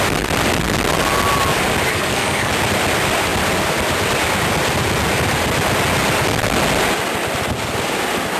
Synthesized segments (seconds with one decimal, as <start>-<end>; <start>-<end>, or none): 1.9-2.5